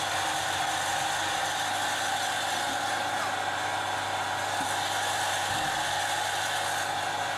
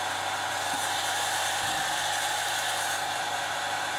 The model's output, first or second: second